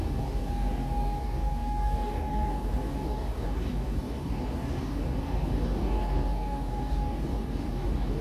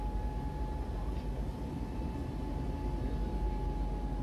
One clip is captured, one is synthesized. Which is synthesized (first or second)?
first